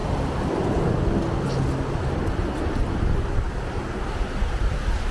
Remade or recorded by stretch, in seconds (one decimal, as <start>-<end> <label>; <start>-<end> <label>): 0.0-0.9 remade; 0.9-5.1 recorded